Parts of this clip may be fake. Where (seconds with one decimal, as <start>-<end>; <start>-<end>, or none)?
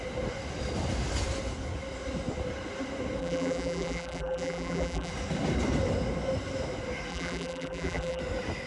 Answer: 3.2-5.1; 7.1-8.2